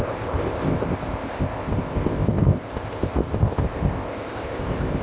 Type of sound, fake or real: fake